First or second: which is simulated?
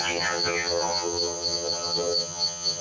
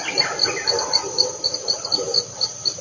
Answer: first